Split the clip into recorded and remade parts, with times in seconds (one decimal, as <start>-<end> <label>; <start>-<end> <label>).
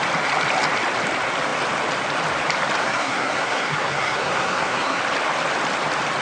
0.0-2.8 recorded; 2.8-5.0 remade; 5.0-6.2 recorded